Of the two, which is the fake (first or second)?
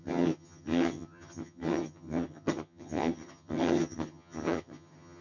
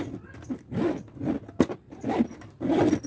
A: first